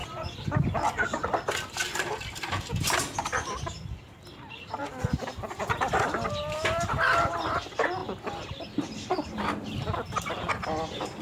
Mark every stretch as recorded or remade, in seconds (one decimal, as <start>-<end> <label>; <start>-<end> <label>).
0.0-2.7 remade; 2.7-8.0 recorded; 8.0-9.4 remade; 9.4-11.2 recorded